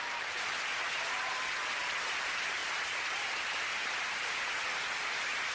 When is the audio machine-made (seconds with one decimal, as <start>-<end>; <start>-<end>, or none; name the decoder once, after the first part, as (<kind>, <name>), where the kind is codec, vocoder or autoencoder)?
none